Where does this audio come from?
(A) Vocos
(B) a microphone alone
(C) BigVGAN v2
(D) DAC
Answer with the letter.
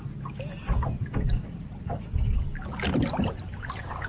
B